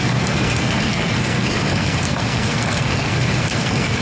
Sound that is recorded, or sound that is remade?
remade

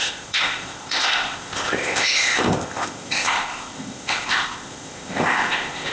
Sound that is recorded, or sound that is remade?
remade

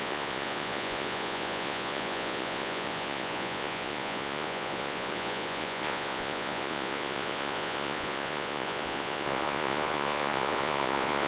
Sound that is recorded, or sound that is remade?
remade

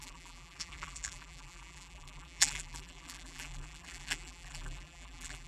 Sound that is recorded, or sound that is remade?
remade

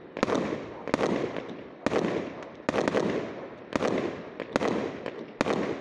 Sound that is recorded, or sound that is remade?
recorded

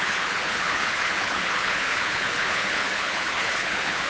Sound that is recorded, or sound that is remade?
remade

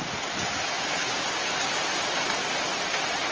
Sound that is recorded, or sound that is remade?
recorded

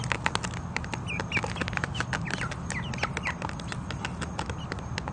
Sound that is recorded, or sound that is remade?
recorded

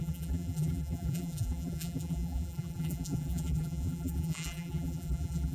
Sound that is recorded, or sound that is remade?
remade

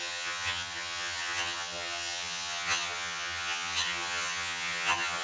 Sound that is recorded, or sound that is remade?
remade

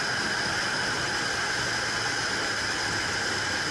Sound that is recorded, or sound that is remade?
recorded